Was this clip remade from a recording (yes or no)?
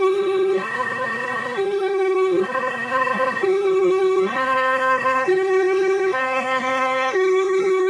yes